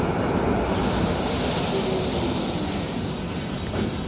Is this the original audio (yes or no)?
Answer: yes